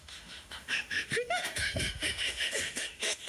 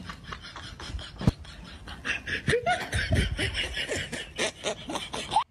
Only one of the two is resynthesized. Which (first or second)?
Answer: first